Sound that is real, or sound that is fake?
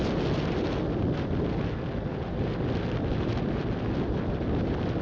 real